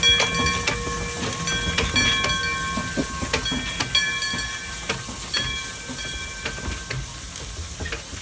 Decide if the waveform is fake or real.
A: real